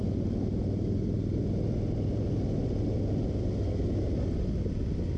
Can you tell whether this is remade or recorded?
recorded